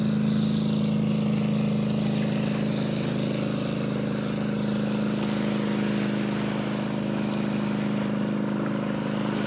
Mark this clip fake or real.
real